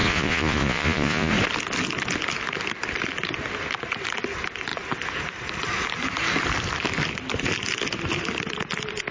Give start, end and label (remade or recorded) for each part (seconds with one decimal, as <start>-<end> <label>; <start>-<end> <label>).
0.0-1.3 remade; 1.3-9.1 recorded

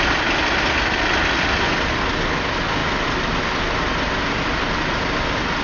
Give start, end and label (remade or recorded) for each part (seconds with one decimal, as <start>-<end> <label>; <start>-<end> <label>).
0.0-5.6 recorded

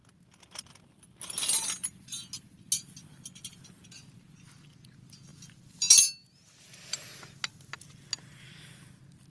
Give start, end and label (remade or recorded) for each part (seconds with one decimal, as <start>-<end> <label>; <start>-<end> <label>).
0.0-9.3 recorded

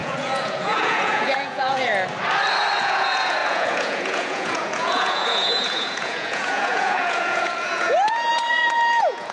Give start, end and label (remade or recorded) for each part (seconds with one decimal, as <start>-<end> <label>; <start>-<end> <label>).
0.0-1.9 remade; 1.9-2.8 recorded; 2.8-9.3 remade

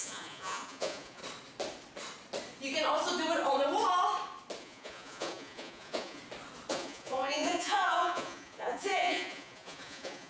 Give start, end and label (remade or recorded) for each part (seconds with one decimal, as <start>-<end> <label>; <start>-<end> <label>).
0.0-1.2 remade; 1.2-4.6 recorded; 4.6-6.2 remade; 6.2-6.7 recorded; 6.7-10.3 remade

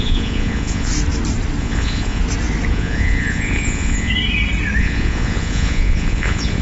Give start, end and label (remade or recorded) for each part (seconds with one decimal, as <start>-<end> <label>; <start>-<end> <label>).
0.0-0.9 remade; 0.9-1.6 recorded; 1.6-2.2 remade; 2.2-2.7 recorded; 2.7-4.1 remade; 4.1-4.8 recorded; 4.8-6.6 remade

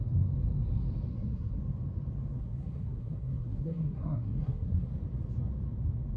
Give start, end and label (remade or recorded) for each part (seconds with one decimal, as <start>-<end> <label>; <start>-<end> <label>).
0.0-1.1 recorded; 1.1-1.6 remade; 1.6-2.4 recorded; 2.4-4.9 remade; 4.9-6.2 recorded

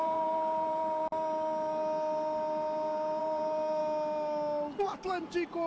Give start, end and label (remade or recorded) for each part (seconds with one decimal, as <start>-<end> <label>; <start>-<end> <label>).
0.0-1.1 remade; 1.1-3.2 recorded; 3.2-3.8 remade; 3.8-4.8 recorded; 4.8-5.7 remade